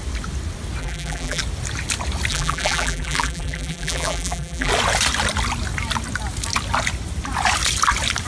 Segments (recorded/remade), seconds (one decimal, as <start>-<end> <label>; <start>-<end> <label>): 0.0-0.8 recorded; 0.8-1.4 remade; 1.4-2.3 recorded; 2.3-4.7 remade; 4.7-8.3 recorded